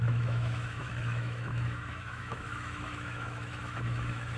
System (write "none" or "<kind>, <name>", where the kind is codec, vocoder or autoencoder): autoencoder, DAC-VAE